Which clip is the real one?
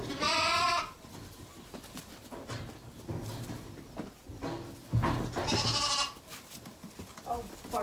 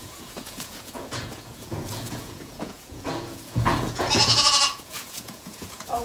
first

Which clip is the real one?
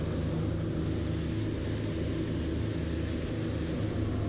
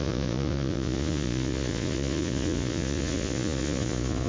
first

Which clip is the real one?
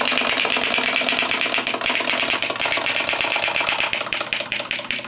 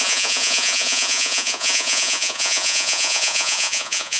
first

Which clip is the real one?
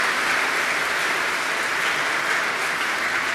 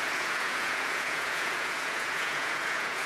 first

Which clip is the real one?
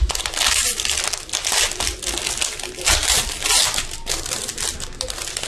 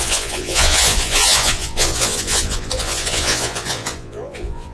first